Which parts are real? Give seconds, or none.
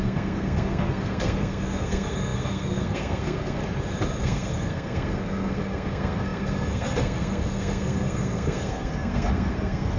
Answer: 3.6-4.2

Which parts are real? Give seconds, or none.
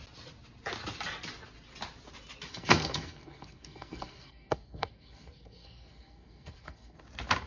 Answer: 0.0-2.5; 7.0-7.5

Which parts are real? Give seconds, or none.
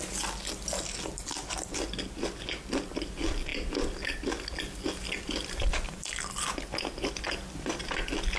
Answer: 0.0-8.4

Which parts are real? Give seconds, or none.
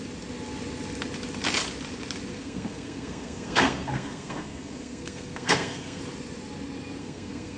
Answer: 0.0-2.3; 6.0-7.0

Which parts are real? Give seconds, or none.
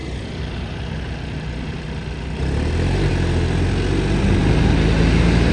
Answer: 0.0-5.5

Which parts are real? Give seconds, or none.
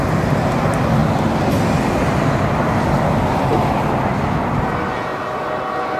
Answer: 0.0-6.0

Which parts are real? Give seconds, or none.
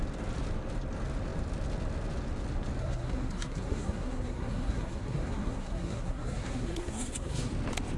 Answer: 0.0-2.8; 7.5-8.0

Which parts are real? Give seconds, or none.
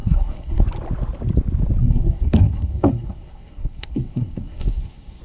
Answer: 0.6-1.8